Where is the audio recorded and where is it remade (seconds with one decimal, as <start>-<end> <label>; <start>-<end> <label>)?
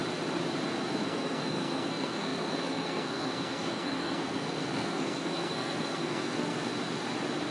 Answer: 0.0-1.0 recorded; 1.0-6.7 remade; 6.7-7.5 recorded